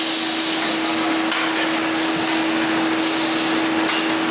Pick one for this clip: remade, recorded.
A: recorded